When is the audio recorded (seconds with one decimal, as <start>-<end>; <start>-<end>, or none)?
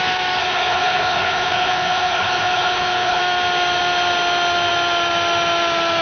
0.0-0.4; 3.2-6.0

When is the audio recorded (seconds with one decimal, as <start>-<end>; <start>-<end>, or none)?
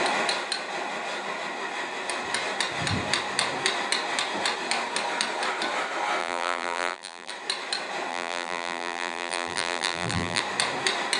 0.0-6.2; 7.3-8.1; 10.4-11.2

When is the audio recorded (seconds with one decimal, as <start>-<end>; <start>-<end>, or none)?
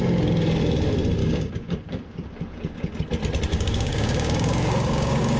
0.0-1.2; 2.3-3.5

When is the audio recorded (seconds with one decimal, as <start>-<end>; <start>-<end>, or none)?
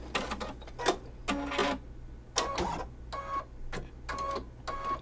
0.0-5.0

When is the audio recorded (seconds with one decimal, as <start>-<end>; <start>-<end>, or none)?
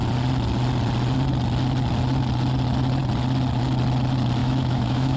0.0-4.4